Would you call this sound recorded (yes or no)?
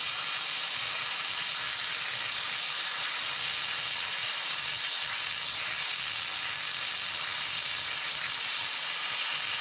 yes